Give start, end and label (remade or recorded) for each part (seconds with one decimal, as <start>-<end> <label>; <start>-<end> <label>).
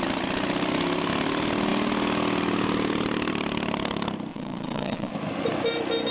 0.0-4.3 recorded; 4.3-5.1 remade; 5.1-6.1 recorded